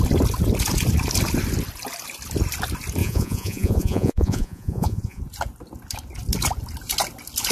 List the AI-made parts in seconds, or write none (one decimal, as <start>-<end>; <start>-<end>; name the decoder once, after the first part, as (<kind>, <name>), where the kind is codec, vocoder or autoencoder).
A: 3.0-5.2 (vocoder, Vocos)